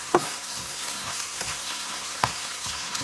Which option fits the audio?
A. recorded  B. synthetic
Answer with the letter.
B